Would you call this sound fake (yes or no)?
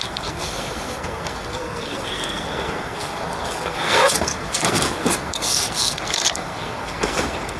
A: yes